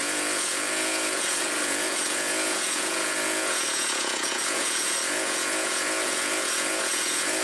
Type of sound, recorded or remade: remade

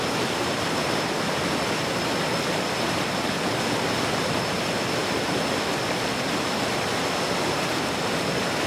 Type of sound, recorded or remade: recorded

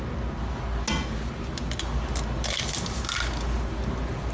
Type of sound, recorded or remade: recorded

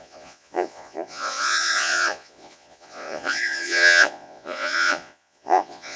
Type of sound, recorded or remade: remade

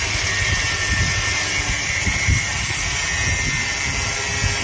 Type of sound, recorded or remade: recorded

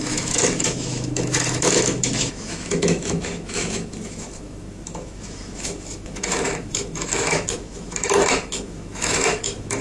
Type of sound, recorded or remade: remade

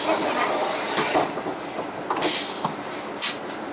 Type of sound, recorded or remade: recorded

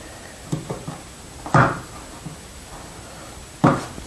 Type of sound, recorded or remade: recorded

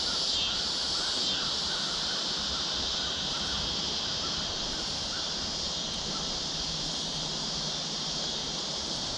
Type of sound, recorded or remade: recorded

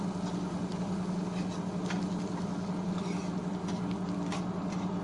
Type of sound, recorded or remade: recorded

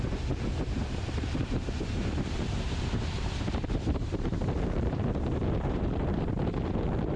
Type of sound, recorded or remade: remade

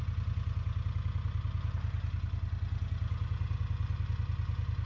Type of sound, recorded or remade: recorded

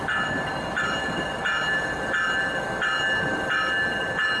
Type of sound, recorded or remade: recorded